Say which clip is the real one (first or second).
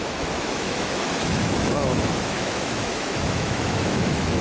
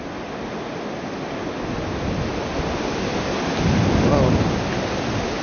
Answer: second